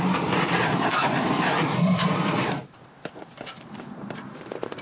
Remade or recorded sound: remade